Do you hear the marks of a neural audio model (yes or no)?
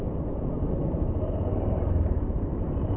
no